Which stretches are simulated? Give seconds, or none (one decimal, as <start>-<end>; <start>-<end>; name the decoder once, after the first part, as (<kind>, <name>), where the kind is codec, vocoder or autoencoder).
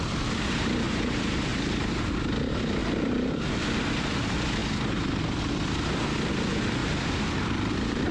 1.5-2.1 (vocoder, BigVGAN v2); 2.8-3.5; 6.8-8.1